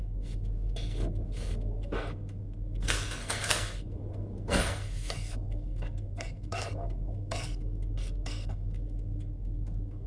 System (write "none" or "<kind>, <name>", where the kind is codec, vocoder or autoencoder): codec, SNAC